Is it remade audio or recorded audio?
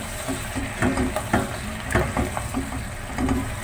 recorded